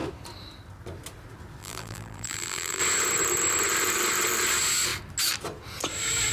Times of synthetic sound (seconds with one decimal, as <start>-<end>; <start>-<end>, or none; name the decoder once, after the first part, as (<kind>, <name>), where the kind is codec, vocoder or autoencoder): 1.6-2.8 (vocoder, BigVGAN v2)